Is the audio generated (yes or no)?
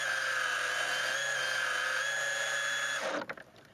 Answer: no